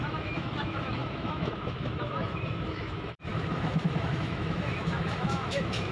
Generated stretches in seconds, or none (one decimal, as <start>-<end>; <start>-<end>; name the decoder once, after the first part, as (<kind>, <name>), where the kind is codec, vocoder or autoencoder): 0.0-5.9 (autoencoder, DAC-VAE)